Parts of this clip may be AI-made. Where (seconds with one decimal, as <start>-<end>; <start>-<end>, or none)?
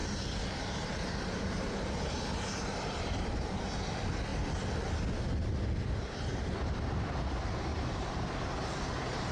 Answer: 0.0-3.6; 7.7-9.3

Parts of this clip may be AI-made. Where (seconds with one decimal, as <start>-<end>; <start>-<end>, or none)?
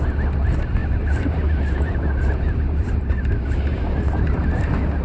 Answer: 0.8-3.8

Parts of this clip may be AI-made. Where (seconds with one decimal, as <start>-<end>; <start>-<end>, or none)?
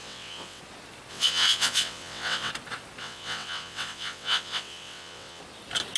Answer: 0.0-0.6; 1.1-2.5; 3.0-5.4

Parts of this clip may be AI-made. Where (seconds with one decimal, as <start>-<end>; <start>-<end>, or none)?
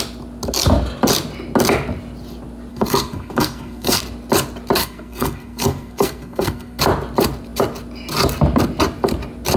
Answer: 2.7-4.0; 4.8-6.8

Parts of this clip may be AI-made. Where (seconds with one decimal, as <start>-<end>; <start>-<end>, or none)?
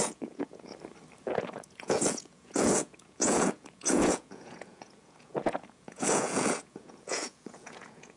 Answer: 0.0-0.7; 1.3-8.2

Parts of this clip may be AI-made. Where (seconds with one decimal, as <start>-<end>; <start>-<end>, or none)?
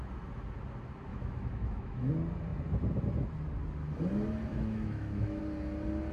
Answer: 1.1-2.1; 4.5-5.4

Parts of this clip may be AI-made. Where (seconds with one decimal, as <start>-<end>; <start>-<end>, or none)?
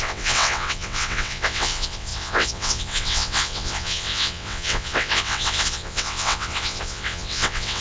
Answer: 0.0-7.8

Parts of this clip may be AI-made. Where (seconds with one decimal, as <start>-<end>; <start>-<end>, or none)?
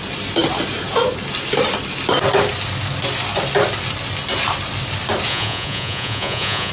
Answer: 5.3-6.7